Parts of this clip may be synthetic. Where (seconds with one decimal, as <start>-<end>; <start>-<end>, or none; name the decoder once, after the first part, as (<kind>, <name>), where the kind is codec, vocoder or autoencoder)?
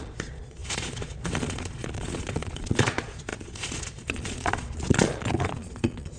0.0-6.2 (vocoder, Vocos)